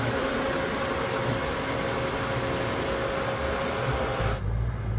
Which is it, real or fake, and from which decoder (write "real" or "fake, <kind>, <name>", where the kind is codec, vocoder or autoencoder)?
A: real